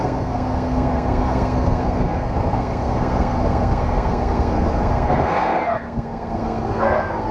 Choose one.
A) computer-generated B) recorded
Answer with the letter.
A